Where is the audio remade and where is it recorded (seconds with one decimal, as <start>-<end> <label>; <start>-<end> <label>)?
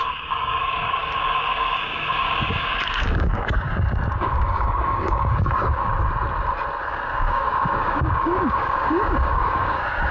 0.0-5.9 remade; 5.9-6.8 recorded; 6.8-10.1 remade